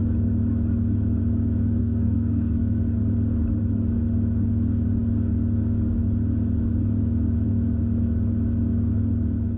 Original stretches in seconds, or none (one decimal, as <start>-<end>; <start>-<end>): 0.0-1.8; 2.8-9.6